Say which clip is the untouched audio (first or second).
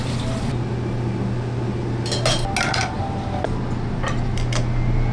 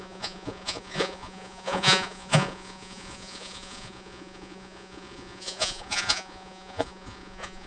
first